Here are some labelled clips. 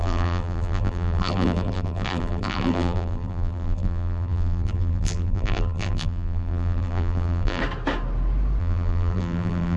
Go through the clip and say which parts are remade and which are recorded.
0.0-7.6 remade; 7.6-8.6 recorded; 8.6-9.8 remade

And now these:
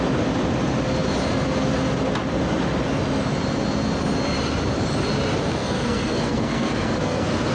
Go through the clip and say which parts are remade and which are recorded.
0.0-5.6 recorded; 5.6-7.5 remade

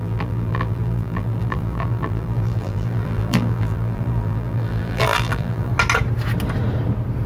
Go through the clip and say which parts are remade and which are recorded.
0.0-5.7 remade; 5.7-7.3 recorded

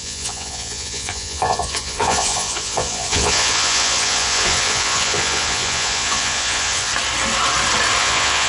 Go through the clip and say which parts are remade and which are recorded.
0.0-6.9 remade; 6.9-8.0 recorded; 8.0-8.5 remade

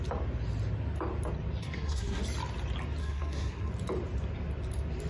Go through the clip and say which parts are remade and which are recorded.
0.0-1.6 recorded; 1.6-2.2 remade; 2.2-3.0 recorded; 3.0-3.7 remade; 3.7-5.1 recorded

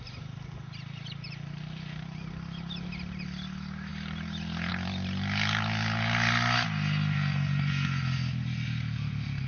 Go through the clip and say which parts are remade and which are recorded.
0.0-9.5 recorded